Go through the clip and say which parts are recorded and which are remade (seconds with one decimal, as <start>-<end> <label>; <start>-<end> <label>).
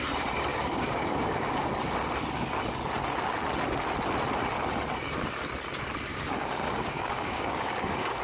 0.0-0.5 recorded; 0.5-1.7 remade; 1.7-6.1 recorded; 6.1-8.2 remade